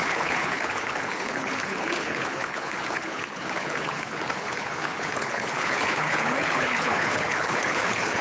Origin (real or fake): fake